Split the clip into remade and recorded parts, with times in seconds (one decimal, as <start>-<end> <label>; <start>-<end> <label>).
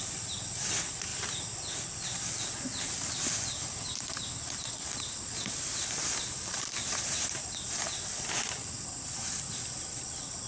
0.0-10.5 recorded